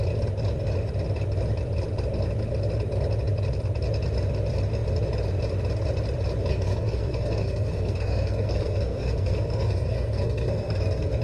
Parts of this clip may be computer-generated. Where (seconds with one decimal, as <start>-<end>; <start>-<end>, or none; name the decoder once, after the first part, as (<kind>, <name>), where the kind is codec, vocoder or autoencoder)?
6.5-11.2 (codec, SNAC)